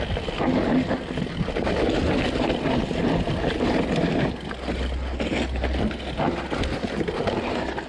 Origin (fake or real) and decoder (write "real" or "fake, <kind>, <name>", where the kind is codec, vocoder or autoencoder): real